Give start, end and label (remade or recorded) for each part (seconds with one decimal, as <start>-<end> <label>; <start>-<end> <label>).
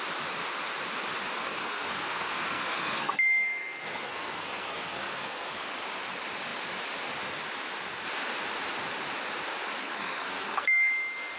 0.0-1.4 recorded; 1.4-5.7 remade; 5.7-9.8 recorded; 9.8-10.9 remade; 10.9-11.4 recorded